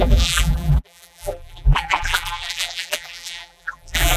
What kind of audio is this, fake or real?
fake